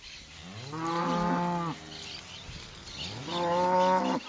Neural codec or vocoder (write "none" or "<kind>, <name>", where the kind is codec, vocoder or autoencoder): none